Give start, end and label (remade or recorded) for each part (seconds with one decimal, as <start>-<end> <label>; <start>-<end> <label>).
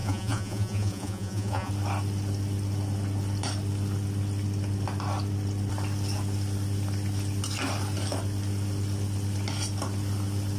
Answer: 0.0-1.7 remade; 1.7-10.6 recorded